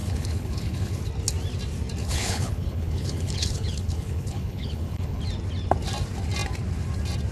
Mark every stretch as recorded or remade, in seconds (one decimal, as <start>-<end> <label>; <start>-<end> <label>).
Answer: 0.0-1.0 remade; 1.0-2.0 recorded; 2.0-5.2 remade; 5.2-7.3 recorded

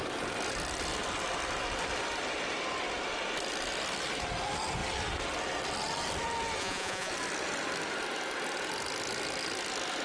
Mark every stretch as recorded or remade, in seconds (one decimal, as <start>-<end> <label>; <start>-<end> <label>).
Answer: 0.0-6.6 recorded; 6.6-7.1 remade; 7.1-10.0 recorded

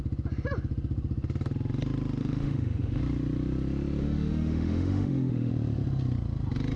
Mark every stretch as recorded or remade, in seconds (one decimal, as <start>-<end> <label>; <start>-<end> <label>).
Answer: 0.0-2.2 recorded; 2.2-3.0 remade; 3.0-4.0 recorded; 4.0-5.5 remade; 5.5-6.8 recorded

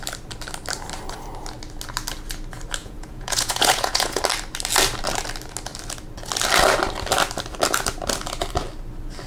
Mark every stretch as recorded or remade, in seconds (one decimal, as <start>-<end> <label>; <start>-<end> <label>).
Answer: 0.0-2.8 recorded; 2.8-4.2 remade; 4.2-9.3 recorded

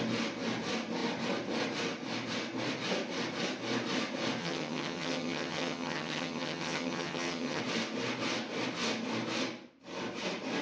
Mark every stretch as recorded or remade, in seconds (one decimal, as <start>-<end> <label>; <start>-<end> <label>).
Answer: 0.0-4.4 recorded; 4.4-7.6 remade; 7.6-10.6 recorded